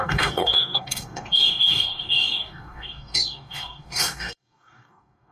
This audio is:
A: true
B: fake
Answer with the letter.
B